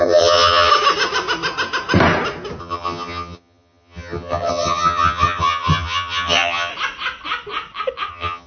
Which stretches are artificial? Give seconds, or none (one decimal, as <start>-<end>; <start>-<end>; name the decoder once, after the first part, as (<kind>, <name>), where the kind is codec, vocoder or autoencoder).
0.0-0.7 (vocoder, HiFi-GAN); 2.6-6.7; 8.1-8.5